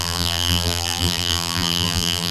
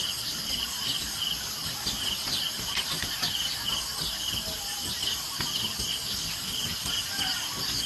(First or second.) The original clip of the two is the second